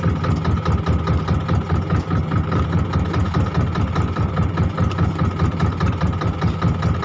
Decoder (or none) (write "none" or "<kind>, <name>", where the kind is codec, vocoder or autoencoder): none